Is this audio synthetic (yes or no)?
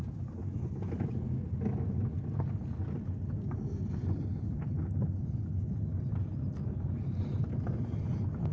no